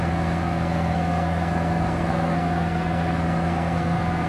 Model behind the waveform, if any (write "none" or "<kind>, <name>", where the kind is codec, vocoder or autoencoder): codec, SNAC